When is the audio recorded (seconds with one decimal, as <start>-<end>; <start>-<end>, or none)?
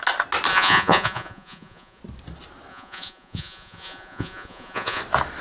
0.0-0.5; 2.0-2.7; 5.0-5.4